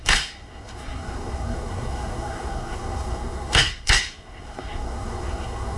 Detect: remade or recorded remade